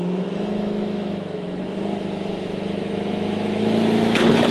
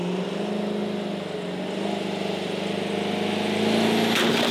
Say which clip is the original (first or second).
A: second